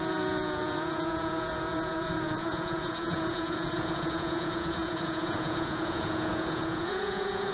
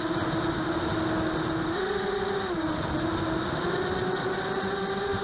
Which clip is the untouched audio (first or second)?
second